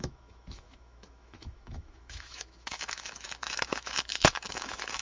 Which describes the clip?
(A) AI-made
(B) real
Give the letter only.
A